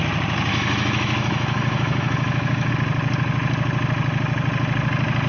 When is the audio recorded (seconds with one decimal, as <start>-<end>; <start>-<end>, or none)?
0.0-0.5; 2.7-5.3